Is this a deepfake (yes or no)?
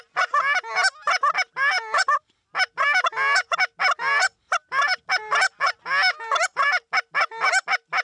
no